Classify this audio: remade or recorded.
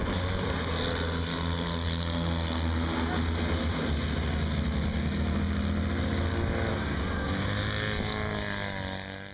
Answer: recorded